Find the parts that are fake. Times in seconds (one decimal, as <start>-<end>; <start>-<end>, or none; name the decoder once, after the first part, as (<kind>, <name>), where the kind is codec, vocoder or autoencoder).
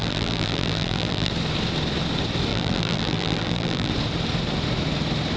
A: 0.0-1.3 (vocoder, BigVGAN v2); 2.5-3.9